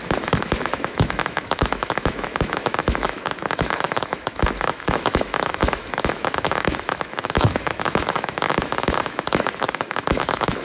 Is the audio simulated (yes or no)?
yes